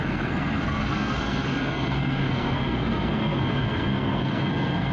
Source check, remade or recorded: remade